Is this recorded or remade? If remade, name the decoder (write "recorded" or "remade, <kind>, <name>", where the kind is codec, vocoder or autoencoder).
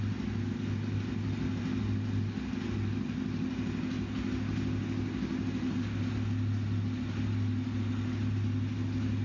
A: recorded